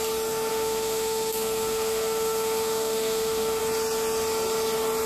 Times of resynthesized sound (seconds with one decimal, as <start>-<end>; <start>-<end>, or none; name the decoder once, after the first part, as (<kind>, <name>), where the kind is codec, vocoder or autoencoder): 0.5-3.6 (autoencoder, DAC-VAE)